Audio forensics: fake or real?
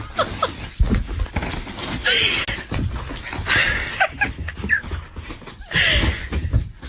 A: real